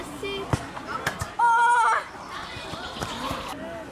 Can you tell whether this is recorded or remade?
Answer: recorded